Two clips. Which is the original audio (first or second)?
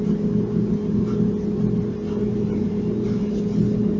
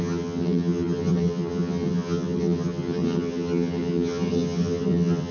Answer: first